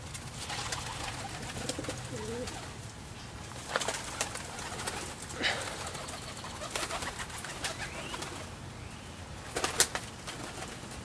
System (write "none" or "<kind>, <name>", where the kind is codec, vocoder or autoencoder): none